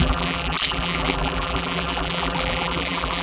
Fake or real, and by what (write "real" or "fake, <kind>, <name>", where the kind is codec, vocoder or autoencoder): fake, vocoder, BigVGAN v2